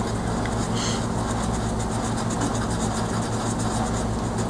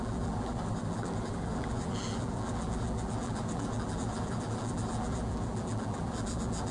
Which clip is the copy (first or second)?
second